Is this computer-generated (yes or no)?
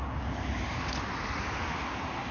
no